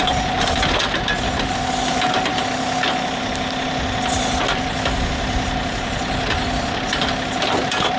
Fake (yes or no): no